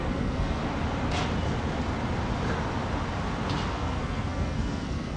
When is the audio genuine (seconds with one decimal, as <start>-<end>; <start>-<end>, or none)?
0.6-3.7